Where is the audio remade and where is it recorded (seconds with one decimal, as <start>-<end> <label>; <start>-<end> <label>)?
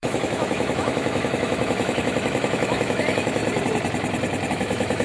0.0-3.4 remade; 3.4-4.5 recorded; 4.5-5.0 remade